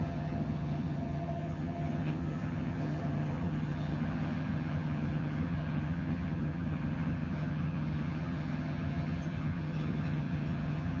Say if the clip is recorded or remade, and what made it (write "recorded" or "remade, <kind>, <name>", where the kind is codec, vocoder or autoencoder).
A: remade, vocoder, HiFi-GAN